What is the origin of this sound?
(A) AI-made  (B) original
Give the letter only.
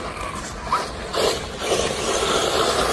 B